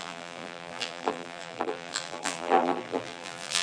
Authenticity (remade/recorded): remade